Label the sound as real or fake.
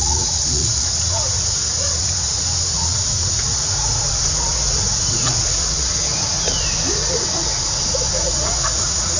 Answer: fake